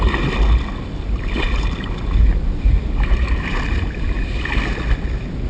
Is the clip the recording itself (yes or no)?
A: yes